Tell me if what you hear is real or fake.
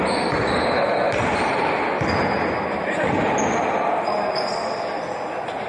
real